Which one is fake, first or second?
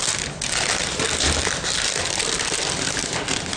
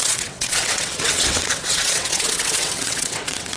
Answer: second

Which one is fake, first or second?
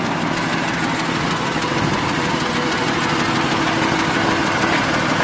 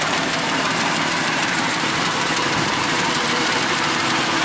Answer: second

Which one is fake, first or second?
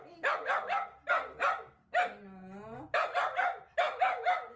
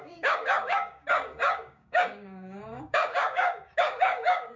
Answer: second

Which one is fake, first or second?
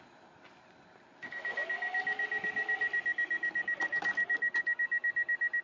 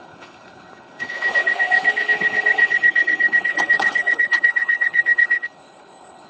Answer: second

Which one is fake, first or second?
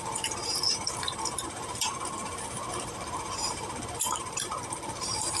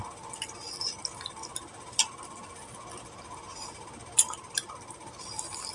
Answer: first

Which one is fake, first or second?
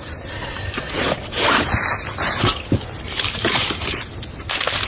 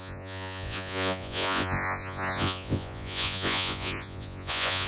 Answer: second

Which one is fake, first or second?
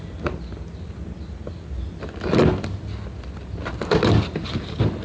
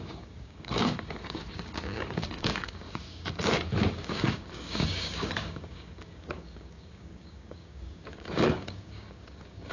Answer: second